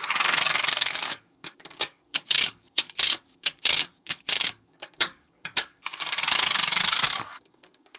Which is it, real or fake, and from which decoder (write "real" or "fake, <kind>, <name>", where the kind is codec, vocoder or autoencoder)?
fake, codec, DAC